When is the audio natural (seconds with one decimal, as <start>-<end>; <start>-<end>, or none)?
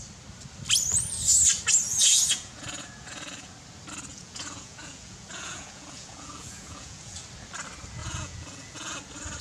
0.0-1.9; 3.5-4.1; 7.2-8.0; 9.0-9.4